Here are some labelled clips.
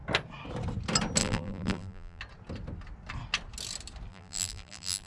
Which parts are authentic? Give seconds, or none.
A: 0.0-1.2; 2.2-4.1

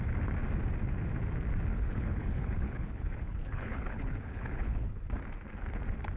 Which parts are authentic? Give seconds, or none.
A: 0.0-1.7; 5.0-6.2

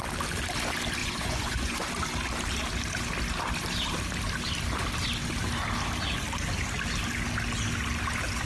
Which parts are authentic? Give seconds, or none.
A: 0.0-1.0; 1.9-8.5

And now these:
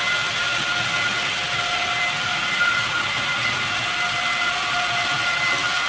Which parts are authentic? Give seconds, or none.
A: 0.0-2.3; 3.6-5.9

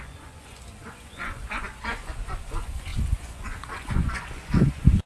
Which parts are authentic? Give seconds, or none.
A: none

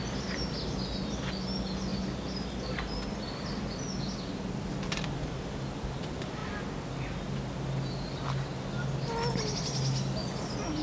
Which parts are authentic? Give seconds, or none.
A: 0.0-10.8